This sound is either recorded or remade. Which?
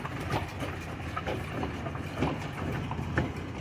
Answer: recorded